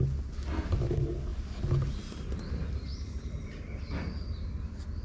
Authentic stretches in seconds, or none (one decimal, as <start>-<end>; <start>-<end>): 0.0-5.0